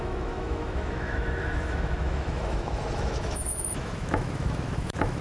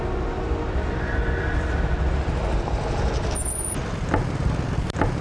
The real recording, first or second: second